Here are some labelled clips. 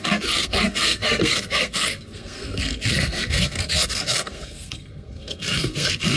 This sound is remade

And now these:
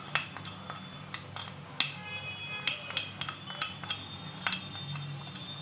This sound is recorded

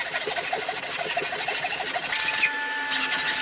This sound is recorded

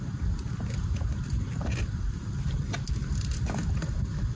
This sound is recorded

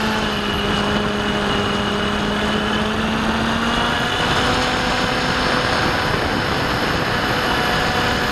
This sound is recorded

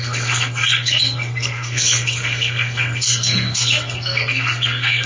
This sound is remade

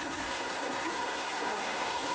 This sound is remade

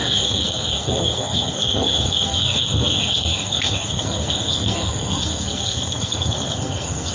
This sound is remade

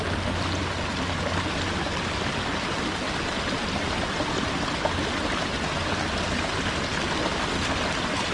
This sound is recorded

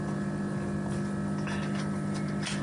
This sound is recorded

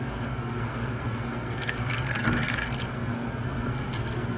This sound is remade